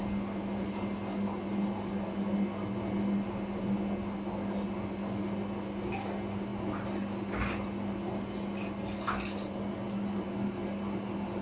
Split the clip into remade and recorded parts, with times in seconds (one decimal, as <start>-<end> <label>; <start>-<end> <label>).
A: 0.0-11.4 recorded